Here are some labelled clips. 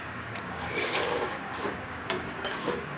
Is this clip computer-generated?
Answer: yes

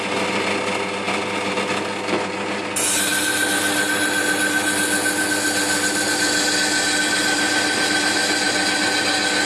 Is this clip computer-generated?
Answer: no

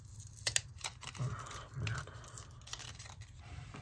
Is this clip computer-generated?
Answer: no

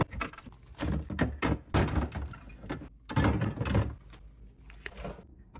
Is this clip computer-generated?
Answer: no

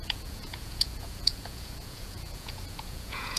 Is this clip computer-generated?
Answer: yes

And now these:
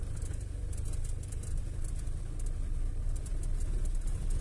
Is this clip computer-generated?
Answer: no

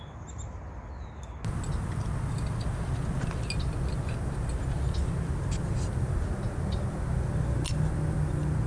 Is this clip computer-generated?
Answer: no